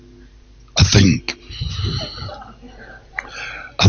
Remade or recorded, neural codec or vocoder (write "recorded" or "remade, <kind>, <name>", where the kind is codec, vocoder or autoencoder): recorded